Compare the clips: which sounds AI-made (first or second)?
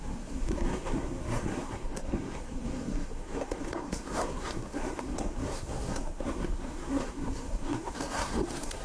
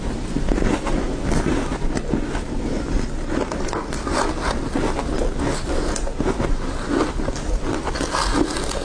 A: first